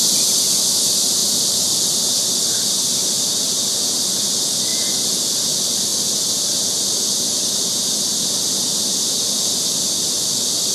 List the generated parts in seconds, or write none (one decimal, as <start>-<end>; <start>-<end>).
none